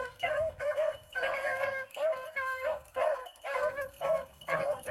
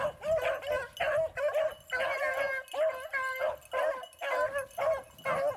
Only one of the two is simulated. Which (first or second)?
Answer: first